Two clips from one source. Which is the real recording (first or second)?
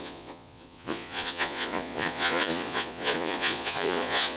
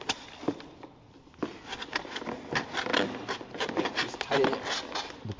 second